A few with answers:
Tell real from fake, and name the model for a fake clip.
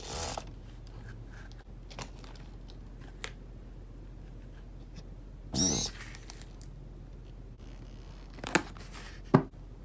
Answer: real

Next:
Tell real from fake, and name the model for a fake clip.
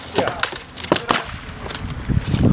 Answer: real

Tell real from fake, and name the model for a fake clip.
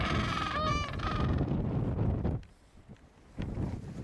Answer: real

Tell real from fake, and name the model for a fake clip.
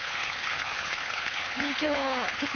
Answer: fake, codec, HILCodec